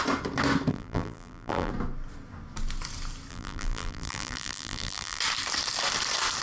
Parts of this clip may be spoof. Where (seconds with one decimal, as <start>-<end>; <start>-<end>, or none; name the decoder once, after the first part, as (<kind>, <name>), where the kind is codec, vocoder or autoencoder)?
0.7-1.7 (vocoder, BigVGAN v2); 3.3-5.2